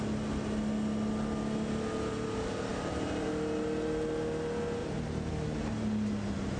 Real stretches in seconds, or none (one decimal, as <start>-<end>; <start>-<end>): 0.0-2.7; 3.3-4.8; 5.3-6.6